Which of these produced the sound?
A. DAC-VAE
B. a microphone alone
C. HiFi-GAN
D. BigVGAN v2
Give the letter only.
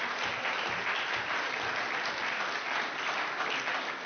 B